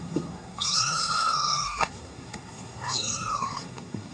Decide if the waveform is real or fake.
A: fake